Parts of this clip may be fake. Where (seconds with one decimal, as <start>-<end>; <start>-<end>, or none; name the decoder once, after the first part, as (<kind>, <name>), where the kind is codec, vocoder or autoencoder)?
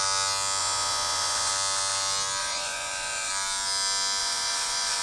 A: 0.6-1.5 (vocoder, Vocos); 2.4-3.3; 4.2-5.0